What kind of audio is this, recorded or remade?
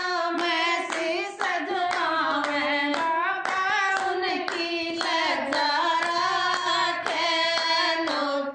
recorded